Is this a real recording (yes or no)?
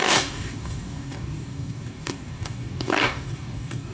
no